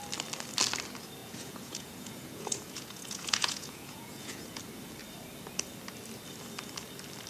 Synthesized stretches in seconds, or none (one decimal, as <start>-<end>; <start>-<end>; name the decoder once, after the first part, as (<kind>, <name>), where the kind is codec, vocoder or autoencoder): 1.2-4.6 (vocoder, Vocos)